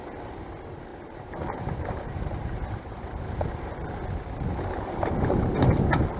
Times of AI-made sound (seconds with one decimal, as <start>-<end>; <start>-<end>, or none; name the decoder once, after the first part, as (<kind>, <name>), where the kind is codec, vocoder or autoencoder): 0.9-2.8 (vocoder, BigVGAN v2)